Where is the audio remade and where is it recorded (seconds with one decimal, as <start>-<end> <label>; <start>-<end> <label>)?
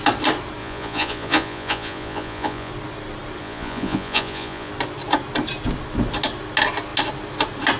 0.0-0.6 recorded; 0.6-2.7 remade; 2.7-3.4 recorded; 3.4-4.7 remade; 4.7-7.8 recorded